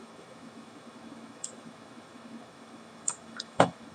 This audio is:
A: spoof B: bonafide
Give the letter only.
A